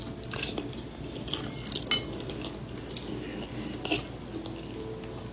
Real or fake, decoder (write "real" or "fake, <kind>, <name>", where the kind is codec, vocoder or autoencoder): real